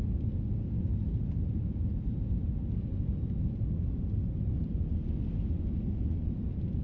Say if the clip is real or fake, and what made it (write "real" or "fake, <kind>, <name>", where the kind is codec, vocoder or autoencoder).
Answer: real